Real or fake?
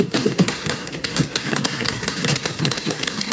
fake